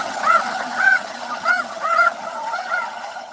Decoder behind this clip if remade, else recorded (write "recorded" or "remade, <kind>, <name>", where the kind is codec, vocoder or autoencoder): remade, vocoder, HiFi-GAN